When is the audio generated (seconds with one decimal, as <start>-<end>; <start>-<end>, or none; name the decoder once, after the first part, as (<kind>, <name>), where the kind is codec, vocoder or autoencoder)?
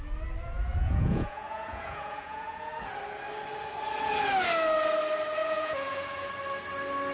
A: 0.7-2.7 (vocoder, Vocos); 5.4-6.3